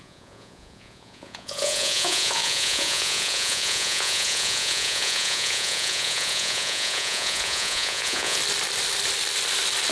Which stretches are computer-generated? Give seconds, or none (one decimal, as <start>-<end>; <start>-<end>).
0.0-8.4